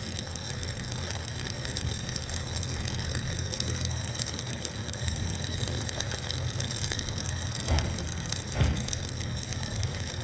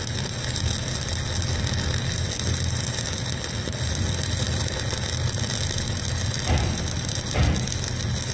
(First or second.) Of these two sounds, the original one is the second